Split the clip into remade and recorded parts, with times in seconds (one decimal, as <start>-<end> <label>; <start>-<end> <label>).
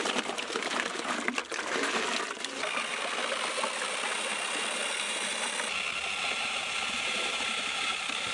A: 0.0-1.4 remade; 1.4-6.3 recorded; 6.3-8.3 remade